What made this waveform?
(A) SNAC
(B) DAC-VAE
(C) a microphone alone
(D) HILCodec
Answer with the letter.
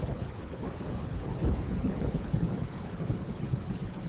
D